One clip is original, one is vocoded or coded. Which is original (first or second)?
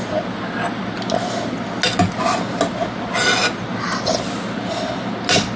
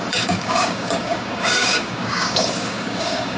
first